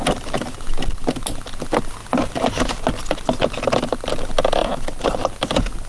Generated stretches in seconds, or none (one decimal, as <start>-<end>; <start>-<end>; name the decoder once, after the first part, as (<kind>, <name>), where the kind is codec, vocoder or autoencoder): none